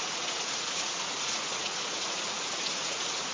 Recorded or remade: remade